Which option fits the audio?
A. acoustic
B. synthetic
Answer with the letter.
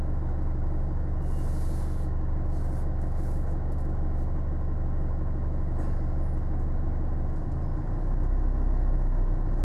A